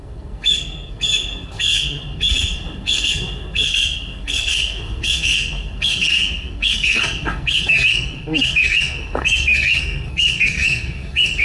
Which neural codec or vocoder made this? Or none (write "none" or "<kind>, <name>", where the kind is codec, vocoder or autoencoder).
codec, SNAC